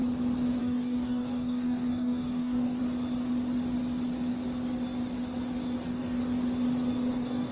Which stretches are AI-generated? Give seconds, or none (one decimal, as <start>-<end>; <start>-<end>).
0.6-2.8; 5.8-6.2; 7.1-7.5